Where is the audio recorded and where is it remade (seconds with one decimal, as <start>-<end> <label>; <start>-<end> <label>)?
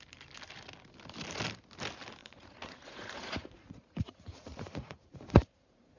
0.0-2.2 recorded; 2.2-6.0 remade